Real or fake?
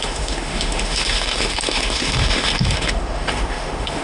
fake